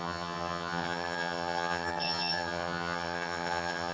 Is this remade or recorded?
remade